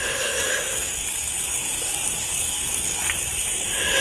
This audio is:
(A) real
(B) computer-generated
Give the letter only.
B